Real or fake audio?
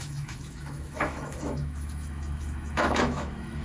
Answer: fake